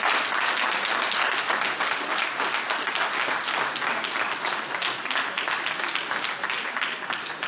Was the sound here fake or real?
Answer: real